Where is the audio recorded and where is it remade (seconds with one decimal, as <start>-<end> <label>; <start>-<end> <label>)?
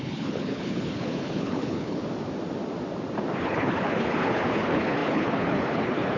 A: 0.0-2.0 remade; 2.0-3.4 recorded; 3.4-6.2 remade